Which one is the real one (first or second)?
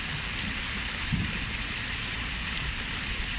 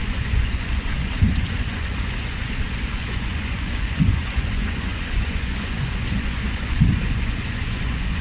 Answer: first